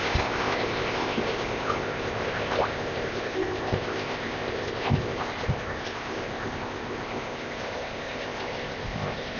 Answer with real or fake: fake